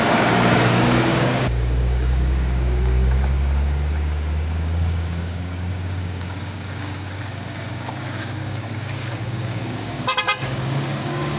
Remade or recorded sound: remade